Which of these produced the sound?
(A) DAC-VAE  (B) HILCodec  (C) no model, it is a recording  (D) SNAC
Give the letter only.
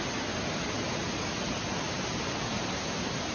C